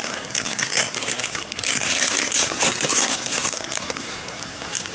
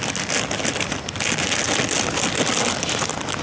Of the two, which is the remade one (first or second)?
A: first